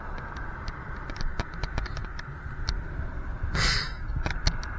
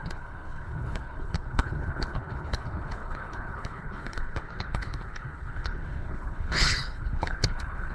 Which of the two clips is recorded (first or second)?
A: first